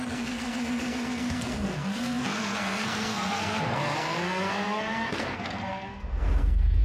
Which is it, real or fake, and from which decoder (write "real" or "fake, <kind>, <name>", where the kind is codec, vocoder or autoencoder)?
fake, codec, SNAC